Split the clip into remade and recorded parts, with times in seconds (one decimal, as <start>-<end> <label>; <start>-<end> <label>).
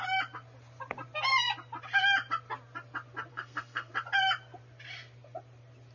0.0-3.3 recorded; 3.3-3.9 remade; 3.9-5.9 recorded